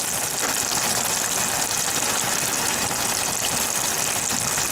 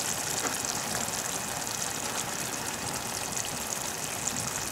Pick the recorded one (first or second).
first